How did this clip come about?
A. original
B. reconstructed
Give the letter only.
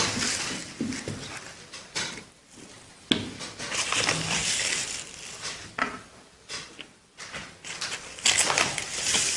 A